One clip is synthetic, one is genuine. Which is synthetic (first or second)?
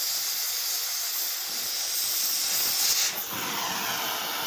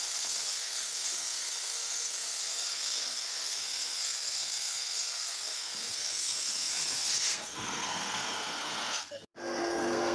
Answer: second